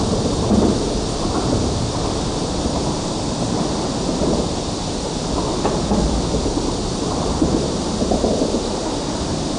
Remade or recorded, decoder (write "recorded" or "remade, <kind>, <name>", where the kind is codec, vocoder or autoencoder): recorded